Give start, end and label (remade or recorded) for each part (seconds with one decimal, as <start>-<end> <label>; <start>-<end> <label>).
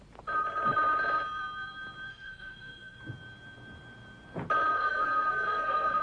0.0-2.1 recorded; 2.1-3.0 remade; 3.0-4.7 recorded; 4.7-6.0 remade